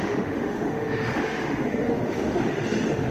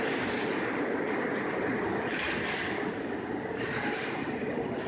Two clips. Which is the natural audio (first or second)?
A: second